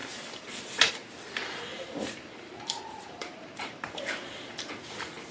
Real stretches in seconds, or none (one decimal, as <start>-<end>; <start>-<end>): 0.9-1.7; 4.0-5.3